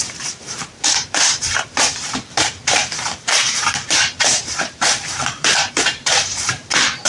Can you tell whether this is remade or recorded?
remade